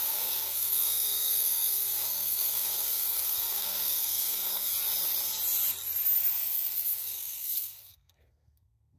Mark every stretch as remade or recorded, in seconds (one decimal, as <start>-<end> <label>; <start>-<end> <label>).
0.0-4.7 remade; 4.7-6.3 recorded; 6.3-9.0 remade